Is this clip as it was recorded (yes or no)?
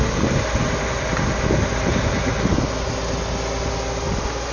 yes